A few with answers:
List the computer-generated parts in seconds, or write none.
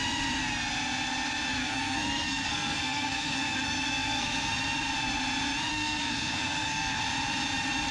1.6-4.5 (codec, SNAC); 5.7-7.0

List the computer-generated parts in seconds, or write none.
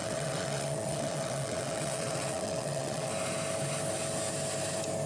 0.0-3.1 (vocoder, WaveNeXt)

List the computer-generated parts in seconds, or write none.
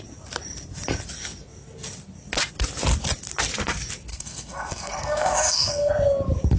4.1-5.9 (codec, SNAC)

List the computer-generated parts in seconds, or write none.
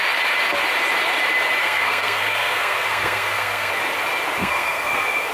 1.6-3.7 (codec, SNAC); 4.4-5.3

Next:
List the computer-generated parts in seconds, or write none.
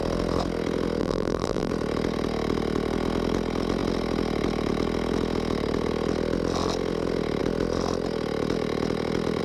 1.0-1.7 (vocoder, BigVGAN v2)